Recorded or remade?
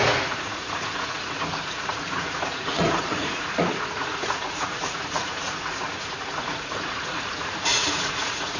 remade